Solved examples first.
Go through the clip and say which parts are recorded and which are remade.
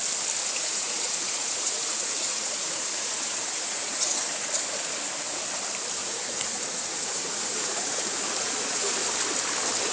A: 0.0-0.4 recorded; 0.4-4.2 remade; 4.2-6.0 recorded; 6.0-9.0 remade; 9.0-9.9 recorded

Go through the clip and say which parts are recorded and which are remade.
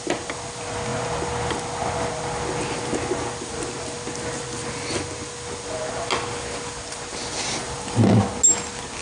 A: 0.0-9.0 recorded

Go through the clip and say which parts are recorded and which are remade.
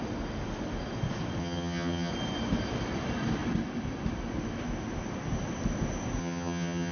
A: 0.0-1.4 recorded; 1.4-2.1 remade; 2.1-6.2 recorded; 6.2-6.9 remade